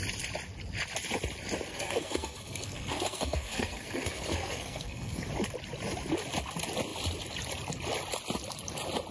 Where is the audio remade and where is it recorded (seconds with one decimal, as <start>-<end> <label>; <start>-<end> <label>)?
0.0-1.7 recorded; 1.7-5.3 remade; 5.3-9.1 recorded